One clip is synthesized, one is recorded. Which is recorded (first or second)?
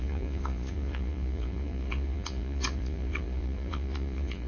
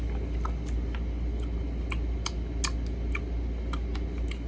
second